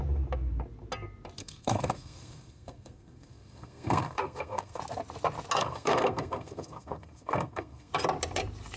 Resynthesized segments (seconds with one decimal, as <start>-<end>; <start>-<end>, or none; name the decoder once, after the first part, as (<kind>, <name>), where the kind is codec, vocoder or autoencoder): 1.4-4.8 (codec, SNAC); 5.6-7.9